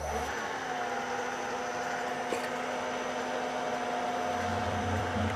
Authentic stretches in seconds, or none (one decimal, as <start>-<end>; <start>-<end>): 0.0-4.5